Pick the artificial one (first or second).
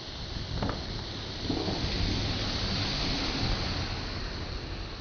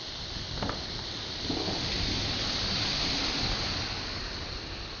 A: second